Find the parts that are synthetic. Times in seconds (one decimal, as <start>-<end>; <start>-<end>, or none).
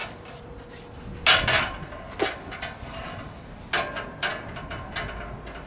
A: none